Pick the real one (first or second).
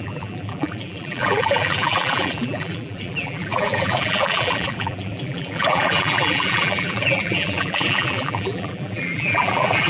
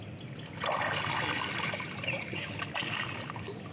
second